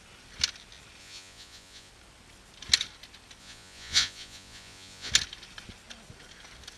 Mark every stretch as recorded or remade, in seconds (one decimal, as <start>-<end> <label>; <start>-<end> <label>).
0.0-1.0 recorded; 1.0-1.9 remade; 1.9-3.4 recorded; 3.4-5.1 remade; 5.1-6.8 recorded